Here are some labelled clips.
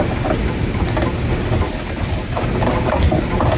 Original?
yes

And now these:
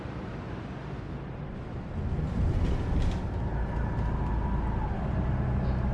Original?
yes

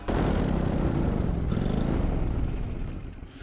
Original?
yes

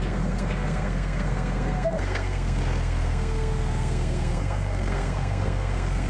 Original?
no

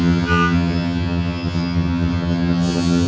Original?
no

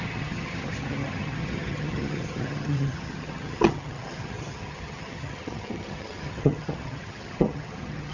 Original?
no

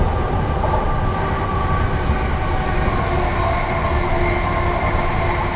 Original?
yes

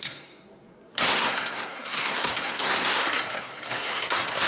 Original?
no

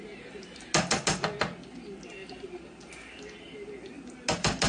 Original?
yes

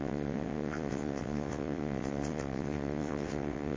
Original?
no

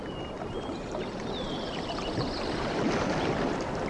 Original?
no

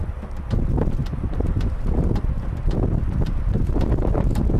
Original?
yes